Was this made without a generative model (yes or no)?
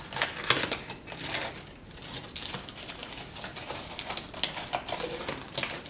yes